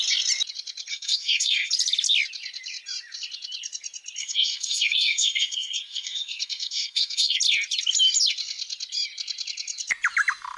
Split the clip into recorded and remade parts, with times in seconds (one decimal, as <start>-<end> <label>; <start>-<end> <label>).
0.0-0.9 recorded; 0.9-1.7 remade; 1.7-4.2 recorded; 4.2-7.4 remade; 7.4-10.6 recorded